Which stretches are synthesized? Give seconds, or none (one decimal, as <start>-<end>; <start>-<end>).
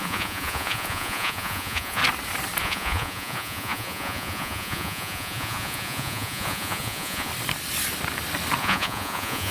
0.0-2.0; 2.6-7.3; 8.6-9.5